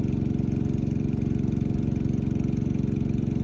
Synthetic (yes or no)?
no